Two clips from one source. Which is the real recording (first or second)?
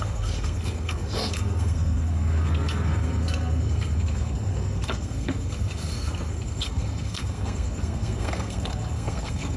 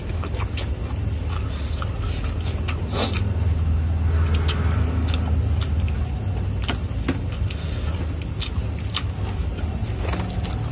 second